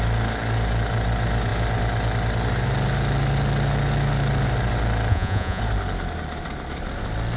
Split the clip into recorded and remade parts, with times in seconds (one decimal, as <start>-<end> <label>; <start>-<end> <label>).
0.0-5.1 recorded; 5.1-5.6 remade; 5.6-7.4 recorded